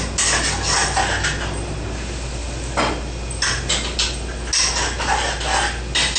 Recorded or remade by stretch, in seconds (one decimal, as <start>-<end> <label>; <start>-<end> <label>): 0.0-6.2 recorded